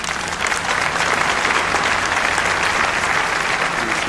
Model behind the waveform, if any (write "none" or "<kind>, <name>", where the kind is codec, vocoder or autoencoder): none